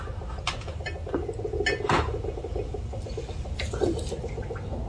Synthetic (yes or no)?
no